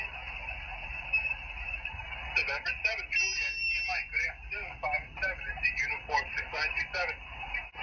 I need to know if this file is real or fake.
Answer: fake